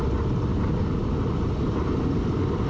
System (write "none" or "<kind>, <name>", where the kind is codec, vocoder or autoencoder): none